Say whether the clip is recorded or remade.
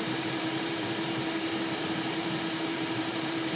remade